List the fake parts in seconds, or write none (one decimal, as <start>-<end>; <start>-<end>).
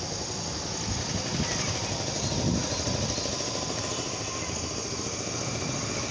none